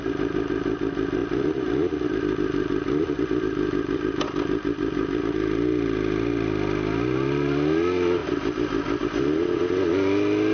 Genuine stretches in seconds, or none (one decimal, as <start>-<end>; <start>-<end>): 0.0-10.5